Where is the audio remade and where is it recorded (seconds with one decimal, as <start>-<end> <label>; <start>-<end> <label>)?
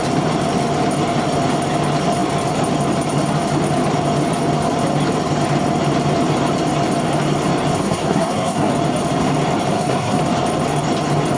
0.0-7.8 recorded; 7.8-8.7 remade; 8.7-9.7 recorded; 9.7-10.2 remade; 10.2-11.4 recorded